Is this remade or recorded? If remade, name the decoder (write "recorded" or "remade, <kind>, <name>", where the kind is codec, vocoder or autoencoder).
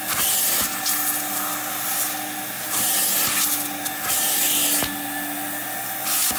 recorded